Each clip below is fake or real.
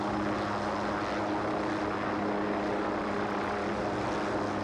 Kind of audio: real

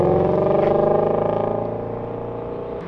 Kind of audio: real